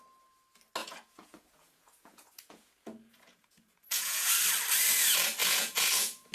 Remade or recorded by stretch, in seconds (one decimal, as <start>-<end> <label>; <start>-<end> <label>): 0.0-0.8 recorded; 0.8-4.3 remade; 4.3-5.4 recorded; 5.4-6.3 remade